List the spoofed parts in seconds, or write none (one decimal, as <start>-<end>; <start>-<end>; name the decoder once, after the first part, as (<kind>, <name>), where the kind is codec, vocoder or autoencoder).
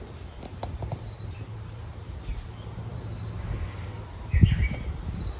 none